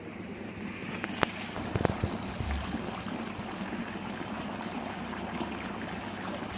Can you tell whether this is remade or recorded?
recorded